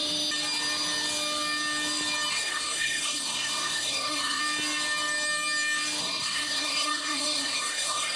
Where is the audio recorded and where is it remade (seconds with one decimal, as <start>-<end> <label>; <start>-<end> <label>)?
0.0-2.3 recorded; 2.3-4.4 remade; 4.4-6.0 recorded; 6.0-8.2 remade